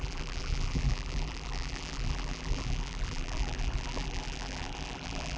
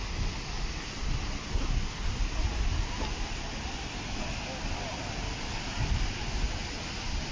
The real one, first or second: second